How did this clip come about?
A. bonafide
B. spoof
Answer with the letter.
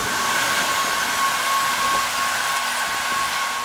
A